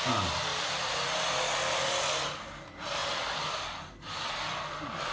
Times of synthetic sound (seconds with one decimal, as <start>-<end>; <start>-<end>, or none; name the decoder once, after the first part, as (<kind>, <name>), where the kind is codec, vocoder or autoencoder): 0.5-1.1 (vocoder, BigVGAN v2); 3.0-5.1